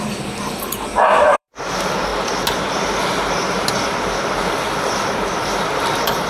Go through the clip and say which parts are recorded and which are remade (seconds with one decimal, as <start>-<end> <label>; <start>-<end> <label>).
0.0-2.1 remade; 2.1-4.4 recorded; 4.4-6.3 remade